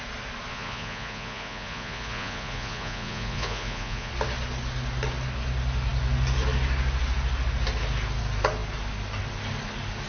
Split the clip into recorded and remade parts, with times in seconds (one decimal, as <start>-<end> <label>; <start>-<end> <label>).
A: 0.0-0.5 recorded; 0.5-4.1 remade; 4.1-10.1 recorded